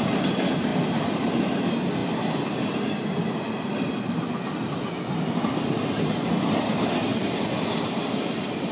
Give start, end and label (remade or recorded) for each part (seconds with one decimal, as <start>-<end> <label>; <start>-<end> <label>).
0.0-0.7 recorded; 0.7-1.5 remade; 1.5-7.1 recorded; 7.1-8.2 remade; 8.2-8.7 recorded